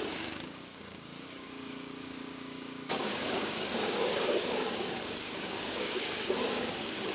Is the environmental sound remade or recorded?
remade